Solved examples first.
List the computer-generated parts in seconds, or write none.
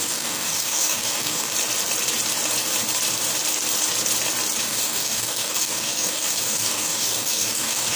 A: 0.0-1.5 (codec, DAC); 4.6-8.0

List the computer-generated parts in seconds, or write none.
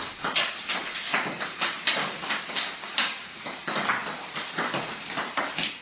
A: 2.0-3.4 (codec, DAC)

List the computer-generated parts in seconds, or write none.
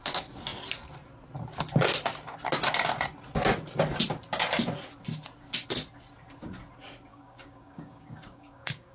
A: 7.1-8.9 (codec, DAC)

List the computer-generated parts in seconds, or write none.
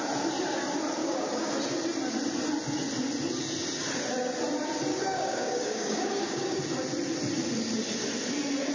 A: 1.0-1.5 (codec, DAC); 4.9-6.6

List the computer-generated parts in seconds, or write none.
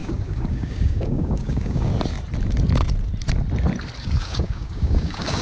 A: 0.0-1.9 (codec, DAC); 4.0-5.4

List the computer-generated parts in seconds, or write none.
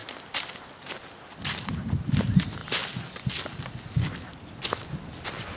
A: none